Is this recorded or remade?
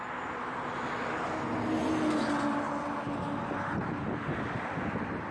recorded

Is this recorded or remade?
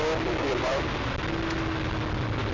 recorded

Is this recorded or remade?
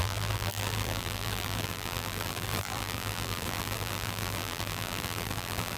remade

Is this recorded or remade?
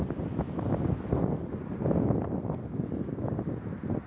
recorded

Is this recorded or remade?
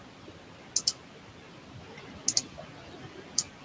recorded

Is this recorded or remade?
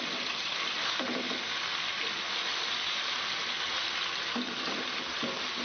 recorded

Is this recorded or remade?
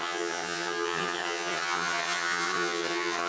remade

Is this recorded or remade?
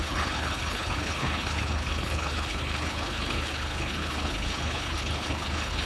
remade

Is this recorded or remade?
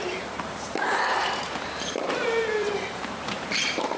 remade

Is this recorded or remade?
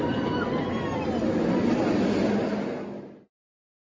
recorded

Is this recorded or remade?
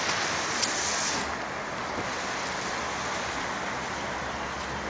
recorded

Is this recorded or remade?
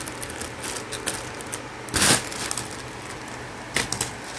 recorded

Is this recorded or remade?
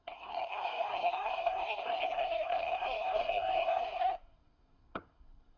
remade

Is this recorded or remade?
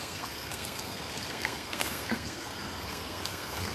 remade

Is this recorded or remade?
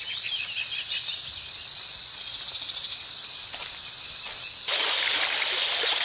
recorded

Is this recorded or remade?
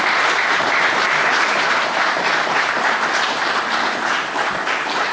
remade